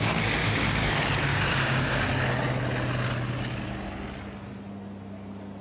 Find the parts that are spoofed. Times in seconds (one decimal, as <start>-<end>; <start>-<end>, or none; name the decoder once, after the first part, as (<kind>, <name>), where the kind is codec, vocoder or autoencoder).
0.4-0.9 (codec, DAC); 1.3-2.1